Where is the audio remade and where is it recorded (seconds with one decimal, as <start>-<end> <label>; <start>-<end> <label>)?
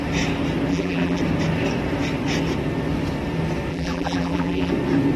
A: 0.0-0.7 recorded; 0.7-1.2 remade; 1.2-3.7 recorded; 3.7-4.7 remade; 4.7-5.2 recorded